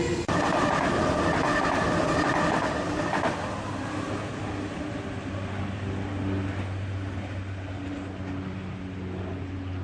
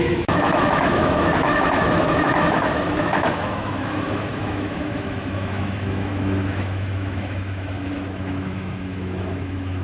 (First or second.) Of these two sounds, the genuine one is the first